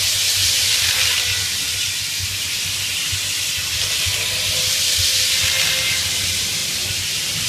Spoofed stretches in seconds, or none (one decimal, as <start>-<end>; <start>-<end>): 0.4-1.0; 6.6-7.5